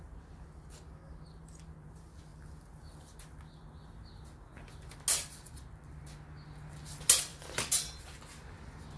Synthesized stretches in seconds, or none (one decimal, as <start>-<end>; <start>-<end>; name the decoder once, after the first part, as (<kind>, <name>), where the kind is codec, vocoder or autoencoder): none

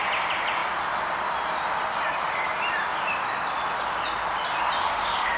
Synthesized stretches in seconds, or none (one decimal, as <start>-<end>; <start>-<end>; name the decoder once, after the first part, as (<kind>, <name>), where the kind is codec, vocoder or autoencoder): 4.8-5.4 (autoencoder, DAC-VAE)